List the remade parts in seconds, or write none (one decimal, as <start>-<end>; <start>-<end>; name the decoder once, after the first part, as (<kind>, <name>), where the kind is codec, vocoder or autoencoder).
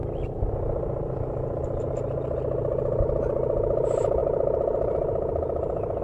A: none